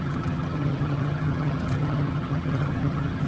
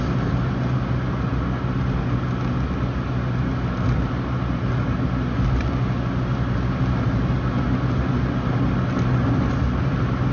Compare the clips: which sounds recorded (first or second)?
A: second